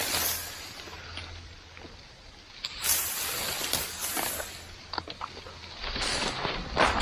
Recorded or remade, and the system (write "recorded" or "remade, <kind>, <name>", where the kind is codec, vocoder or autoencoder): recorded